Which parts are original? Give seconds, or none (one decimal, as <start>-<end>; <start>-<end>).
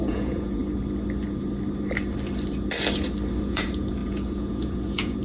0.6-3.4